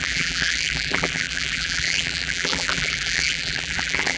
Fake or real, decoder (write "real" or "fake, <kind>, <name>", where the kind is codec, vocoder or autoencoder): fake, vocoder, BigVGAN v2